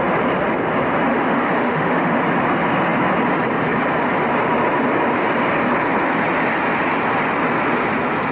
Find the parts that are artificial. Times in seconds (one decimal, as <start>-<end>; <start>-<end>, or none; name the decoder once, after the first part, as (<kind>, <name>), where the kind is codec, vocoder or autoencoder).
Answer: 1.1-2.2 (autoencoder, DAC-VAE)